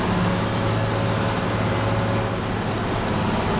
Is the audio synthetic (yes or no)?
no